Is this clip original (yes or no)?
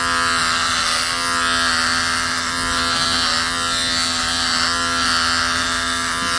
yes